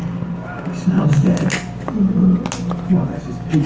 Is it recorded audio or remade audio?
recorded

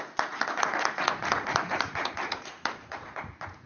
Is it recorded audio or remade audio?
remade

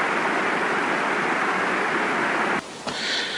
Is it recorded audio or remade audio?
recorded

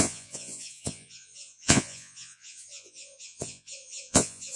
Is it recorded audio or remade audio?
remade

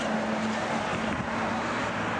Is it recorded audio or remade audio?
recorded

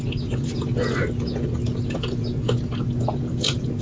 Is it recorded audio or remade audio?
recorded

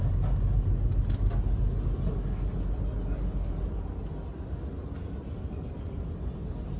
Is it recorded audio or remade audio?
recorded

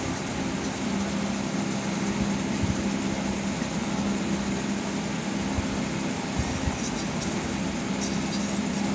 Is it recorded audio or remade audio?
recorded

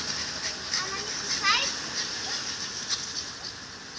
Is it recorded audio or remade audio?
recorded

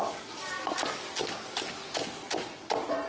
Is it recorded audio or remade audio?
recorded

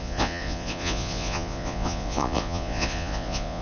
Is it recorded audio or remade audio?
remade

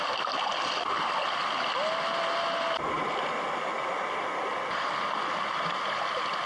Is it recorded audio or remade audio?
recorded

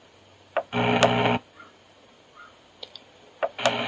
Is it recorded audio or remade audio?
recorded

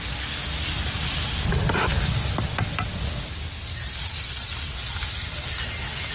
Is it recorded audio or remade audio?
recorded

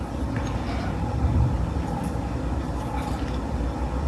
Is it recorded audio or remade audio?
recorded